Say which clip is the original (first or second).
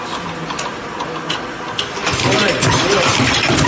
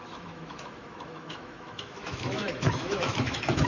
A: first